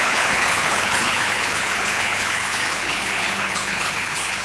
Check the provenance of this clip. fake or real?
fake